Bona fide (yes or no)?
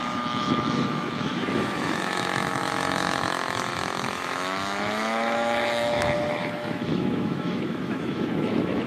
no